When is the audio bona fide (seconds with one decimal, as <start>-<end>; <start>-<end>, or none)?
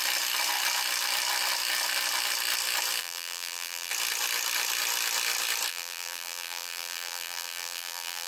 0.0-3.0; 3.9-5.7